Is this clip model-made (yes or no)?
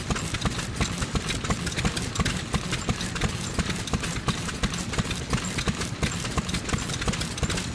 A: no